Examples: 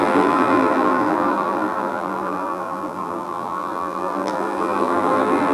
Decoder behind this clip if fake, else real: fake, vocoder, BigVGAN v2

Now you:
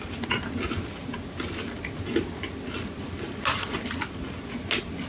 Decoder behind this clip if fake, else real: real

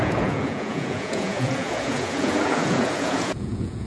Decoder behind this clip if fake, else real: fake, vocoder, Vocos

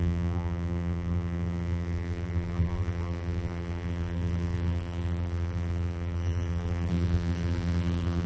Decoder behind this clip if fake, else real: fake, vocoder, BigVGAN v2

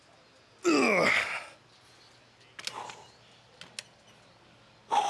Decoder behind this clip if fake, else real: real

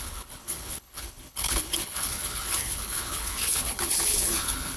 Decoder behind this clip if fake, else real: fake, codec, HILCodec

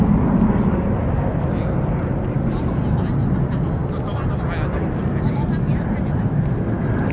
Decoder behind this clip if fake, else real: real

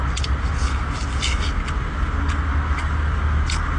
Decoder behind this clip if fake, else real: real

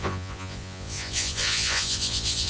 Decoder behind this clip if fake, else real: fake, vocoder, Vocos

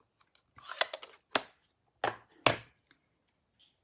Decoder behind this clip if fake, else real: real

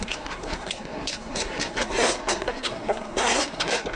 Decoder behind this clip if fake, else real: fake, codec, SNAC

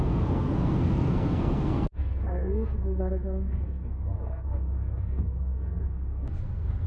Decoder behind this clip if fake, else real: fake, codec, SNAC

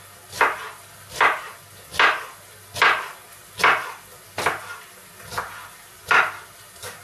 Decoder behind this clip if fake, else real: real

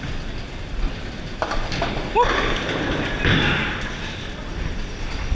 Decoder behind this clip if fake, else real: real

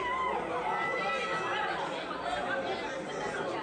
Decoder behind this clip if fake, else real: real